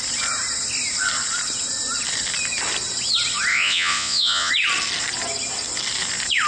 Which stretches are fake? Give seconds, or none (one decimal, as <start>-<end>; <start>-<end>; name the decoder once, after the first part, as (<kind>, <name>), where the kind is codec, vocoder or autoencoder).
3.5-4.5 (vocoder, Vocos)